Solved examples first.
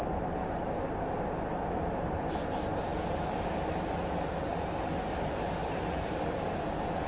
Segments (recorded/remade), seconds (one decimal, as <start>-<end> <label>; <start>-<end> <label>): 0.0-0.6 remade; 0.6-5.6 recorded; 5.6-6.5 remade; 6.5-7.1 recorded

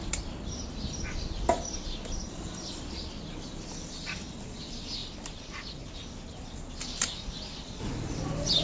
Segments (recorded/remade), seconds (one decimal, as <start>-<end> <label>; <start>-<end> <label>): 0.0-8.6 recorded

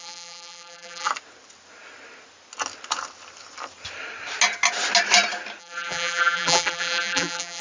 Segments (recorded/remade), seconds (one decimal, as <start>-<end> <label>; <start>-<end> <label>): 0.0-1.1 remade; 1.1-5.6 recorded; 5.6-7.6 remade

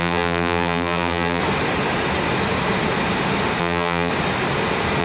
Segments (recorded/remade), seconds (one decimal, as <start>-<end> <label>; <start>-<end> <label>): 0.0-1.4 remade; 1.4-3.6 recorded; 3.6-4.1 remade; 4.1-5.0 recorded

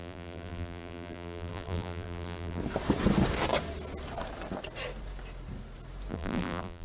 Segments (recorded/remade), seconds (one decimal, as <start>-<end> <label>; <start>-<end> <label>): 0.0-2.6 remade; 2.6-6.1 recorded; 6.1-6.8 remade